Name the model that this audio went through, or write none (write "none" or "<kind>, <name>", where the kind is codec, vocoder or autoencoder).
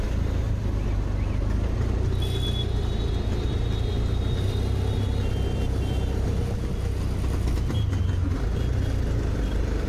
none